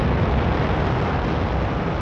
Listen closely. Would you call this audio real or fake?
real